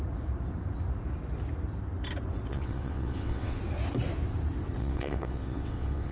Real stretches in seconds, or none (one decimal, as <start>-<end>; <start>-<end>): 0.0-2.5; 3.6-4.8